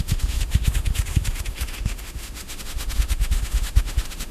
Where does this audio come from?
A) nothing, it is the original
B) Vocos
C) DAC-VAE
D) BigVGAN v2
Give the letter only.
C